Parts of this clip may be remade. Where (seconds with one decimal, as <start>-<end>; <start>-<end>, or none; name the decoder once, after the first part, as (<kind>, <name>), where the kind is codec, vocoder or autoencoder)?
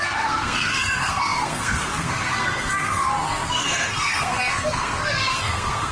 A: 0.0-5.9 (codec, SNAC)